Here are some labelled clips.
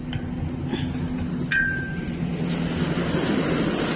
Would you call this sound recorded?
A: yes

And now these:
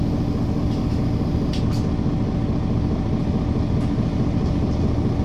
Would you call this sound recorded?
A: yes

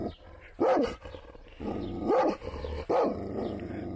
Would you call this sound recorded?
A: yes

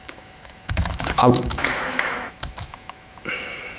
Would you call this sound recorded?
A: no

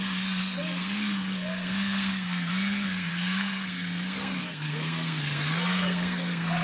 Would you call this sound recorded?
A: no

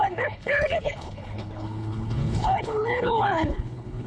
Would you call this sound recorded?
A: no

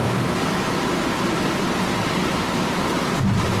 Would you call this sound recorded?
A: yes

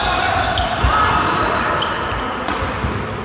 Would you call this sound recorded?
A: no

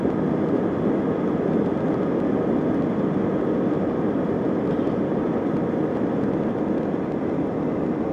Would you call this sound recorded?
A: yes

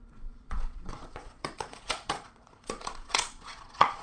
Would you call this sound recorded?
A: no